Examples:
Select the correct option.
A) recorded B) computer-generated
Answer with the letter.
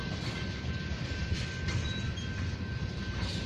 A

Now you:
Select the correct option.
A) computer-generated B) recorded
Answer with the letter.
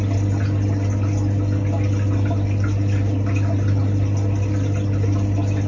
B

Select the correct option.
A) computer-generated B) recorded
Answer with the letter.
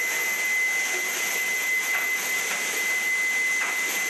B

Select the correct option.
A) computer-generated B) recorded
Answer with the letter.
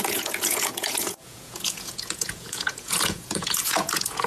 A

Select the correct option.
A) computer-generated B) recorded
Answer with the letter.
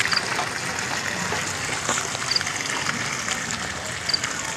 B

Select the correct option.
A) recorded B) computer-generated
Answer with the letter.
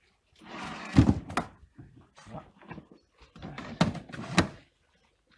A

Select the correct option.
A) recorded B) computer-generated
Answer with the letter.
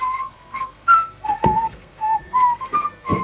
B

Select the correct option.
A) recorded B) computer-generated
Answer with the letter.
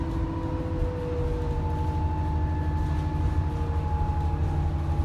A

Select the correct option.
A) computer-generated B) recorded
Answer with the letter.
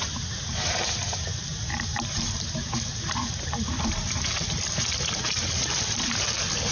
B